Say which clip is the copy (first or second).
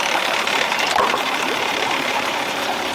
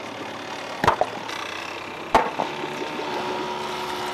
first